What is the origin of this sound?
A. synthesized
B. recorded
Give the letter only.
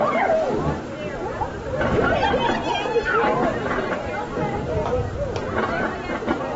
B